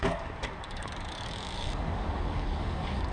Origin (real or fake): fake